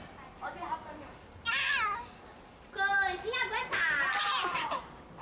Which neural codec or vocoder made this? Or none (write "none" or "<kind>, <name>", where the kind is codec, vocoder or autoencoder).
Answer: none